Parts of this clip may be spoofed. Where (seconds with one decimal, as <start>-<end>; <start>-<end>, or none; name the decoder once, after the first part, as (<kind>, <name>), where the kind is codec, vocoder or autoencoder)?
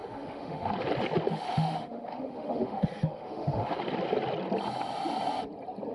0.0-0.7 (autoencoder, DAC-VAE); 1.3-3.8